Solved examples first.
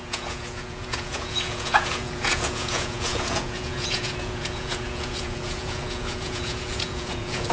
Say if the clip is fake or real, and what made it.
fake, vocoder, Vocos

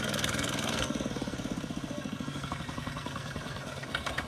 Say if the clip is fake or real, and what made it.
fake, codec, SNAC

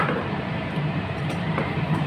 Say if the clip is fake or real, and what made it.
fake, vocoder, BigVGAN v2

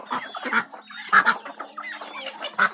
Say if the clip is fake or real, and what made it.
real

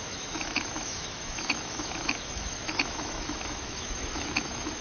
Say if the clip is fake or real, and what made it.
fake, autoencoder, DAC-VAE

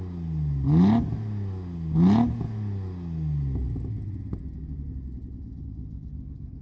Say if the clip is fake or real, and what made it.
real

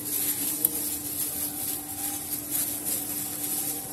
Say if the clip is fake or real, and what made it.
real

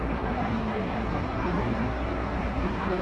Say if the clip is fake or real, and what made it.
fake, codec, SNAC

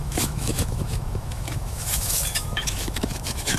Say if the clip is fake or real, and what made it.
fake, autoencoder, DAC-VAE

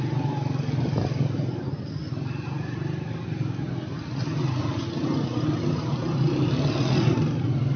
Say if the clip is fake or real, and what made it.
real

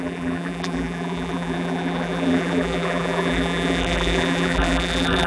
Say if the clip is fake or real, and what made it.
fake, vocoder, BigVGAN v2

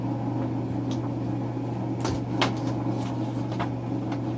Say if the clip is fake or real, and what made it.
real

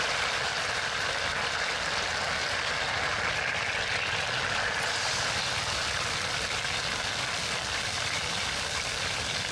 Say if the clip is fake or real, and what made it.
real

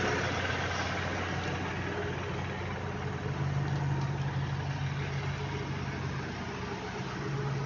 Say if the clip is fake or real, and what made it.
real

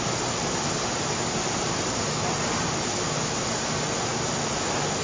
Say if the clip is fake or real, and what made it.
real